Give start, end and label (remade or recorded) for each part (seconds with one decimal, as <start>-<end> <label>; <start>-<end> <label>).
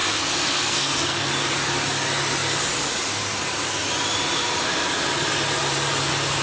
0.0-1.3 remade; 1.3-6.4 recorded